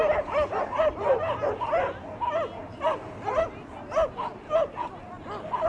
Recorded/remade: recorded